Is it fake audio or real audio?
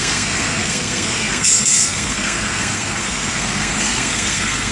fake